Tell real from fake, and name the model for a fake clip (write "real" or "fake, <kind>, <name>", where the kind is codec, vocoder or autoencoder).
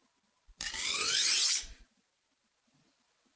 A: fake, vocoder, BigVGAN v2